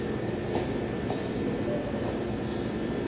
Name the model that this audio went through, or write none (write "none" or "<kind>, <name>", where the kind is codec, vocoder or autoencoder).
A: none